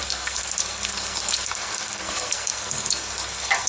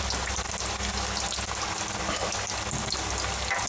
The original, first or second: second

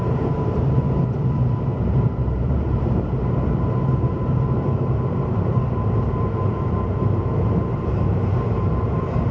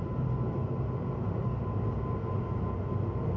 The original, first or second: second